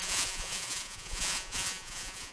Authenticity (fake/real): fake